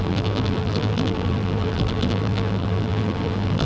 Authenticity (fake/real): fake